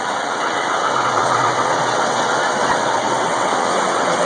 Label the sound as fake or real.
fake